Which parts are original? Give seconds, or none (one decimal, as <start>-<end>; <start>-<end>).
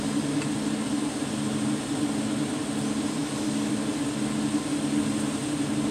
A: 0.0-3.2; 3.7-5.9